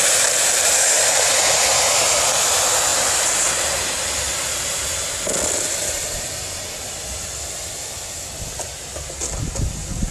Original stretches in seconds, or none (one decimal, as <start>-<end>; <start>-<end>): 0.0-10.1